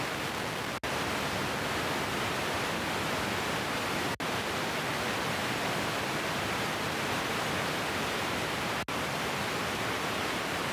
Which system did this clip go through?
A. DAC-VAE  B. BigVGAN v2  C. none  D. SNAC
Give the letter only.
C